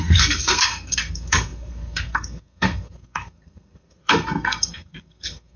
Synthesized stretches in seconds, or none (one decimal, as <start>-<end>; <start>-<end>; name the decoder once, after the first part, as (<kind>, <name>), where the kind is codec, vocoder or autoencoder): 0.0-5.6 (codec, SNAC)

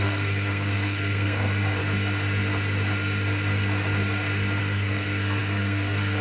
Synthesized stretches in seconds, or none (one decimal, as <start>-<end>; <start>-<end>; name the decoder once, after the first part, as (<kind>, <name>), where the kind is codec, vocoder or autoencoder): 0.0-1.8 (codec, SNAC); 4.6-6.2